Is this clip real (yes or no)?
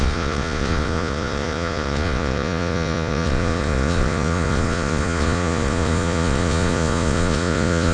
no